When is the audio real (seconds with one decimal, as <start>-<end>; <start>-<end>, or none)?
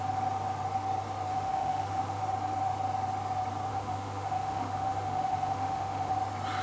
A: 0.0-1.3; 2.2-3.7; 6.1-6.6